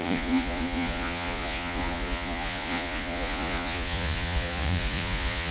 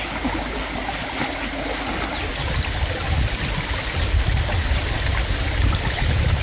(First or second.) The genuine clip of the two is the second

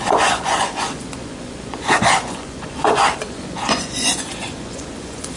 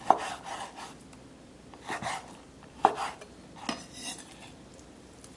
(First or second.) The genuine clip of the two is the second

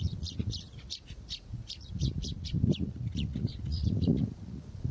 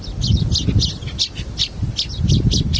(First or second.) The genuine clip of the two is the second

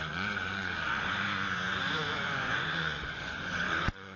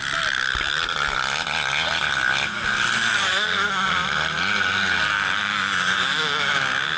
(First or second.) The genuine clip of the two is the second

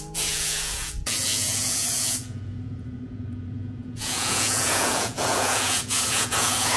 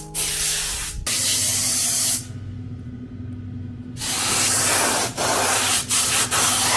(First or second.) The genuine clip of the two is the second